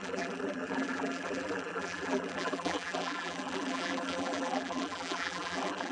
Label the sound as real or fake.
fake